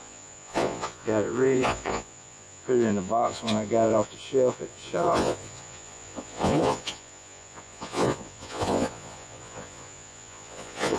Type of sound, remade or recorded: remade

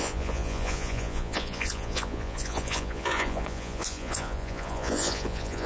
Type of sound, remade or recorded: remade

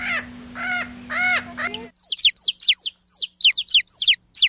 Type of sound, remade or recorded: recorded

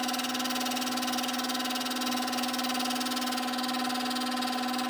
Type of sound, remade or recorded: recorded